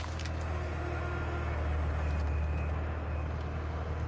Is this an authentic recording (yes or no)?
yes